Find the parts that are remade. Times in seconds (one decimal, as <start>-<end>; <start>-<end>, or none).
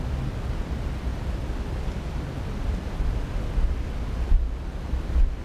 1.1-4.3